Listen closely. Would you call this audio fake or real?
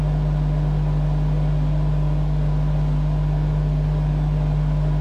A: real